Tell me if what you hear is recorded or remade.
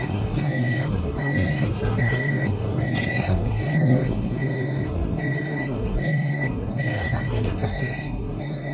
remade